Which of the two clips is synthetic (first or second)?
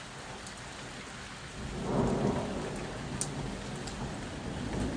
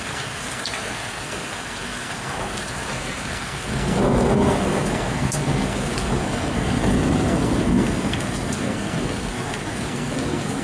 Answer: second